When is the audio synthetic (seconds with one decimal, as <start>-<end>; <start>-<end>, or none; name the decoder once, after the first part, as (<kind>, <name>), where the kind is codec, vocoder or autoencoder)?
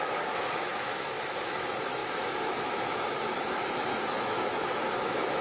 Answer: 0.0-5.4 (autoencoder, DAC-VAE)